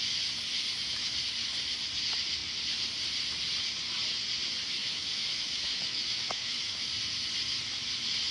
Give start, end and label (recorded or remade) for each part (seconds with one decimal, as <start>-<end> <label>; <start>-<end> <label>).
0.0-4.8 recorded; 4.8-6.9 remade; 6.9-8.3 recorded